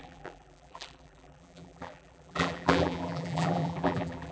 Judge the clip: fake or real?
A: fake